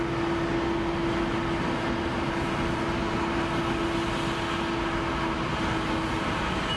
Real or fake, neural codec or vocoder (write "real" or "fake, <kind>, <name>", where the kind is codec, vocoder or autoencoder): real